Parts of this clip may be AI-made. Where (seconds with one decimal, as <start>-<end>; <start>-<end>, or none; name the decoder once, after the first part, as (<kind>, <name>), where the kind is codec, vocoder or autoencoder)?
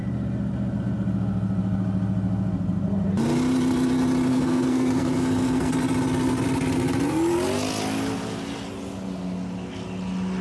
4.3-5.7 (codec, SNAC)